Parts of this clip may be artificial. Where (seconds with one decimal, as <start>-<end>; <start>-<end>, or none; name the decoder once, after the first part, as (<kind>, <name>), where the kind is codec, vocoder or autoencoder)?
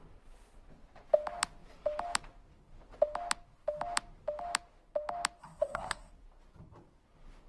5.4-6.1 (codec, SNAC)